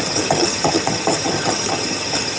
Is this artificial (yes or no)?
yes